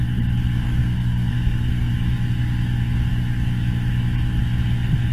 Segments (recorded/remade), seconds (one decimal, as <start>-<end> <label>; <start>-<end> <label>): 0.0-0.8 recorded; 0.8-1.9 remade; 1.9-5.1 recorded